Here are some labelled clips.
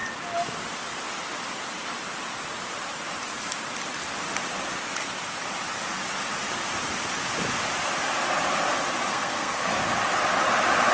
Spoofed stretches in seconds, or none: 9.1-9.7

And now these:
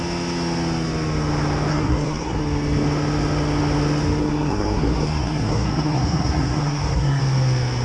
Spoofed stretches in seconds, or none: 1.7-2.4; 4.2-7.2